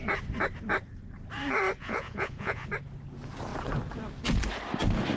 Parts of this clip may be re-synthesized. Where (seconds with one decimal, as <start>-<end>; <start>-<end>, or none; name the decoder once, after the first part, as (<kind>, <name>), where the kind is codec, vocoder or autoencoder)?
1.8-2.7 (vocoder, Vocos)